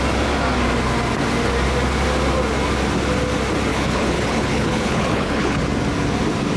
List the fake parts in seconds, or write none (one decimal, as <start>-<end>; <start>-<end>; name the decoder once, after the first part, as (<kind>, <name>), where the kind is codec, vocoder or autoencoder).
3.7-5.6 (codec, HILCodec)

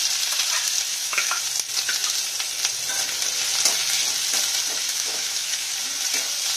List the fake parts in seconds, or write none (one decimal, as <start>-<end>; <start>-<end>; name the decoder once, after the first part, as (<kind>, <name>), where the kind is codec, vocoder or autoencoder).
0.9-1.4 (autoencoder, DAC-VAE); 4.9-5.7